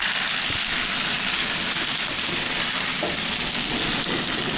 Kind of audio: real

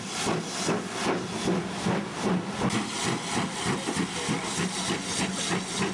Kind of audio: real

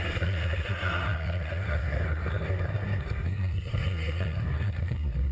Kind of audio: fake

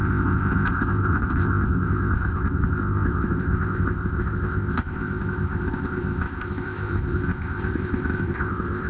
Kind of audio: fake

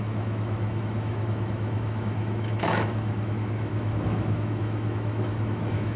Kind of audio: fake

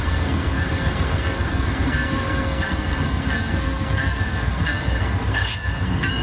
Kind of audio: fake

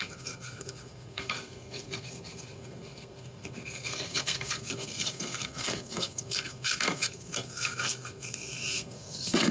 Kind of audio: fake